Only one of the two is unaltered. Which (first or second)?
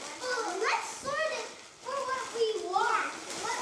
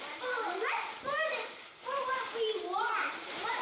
first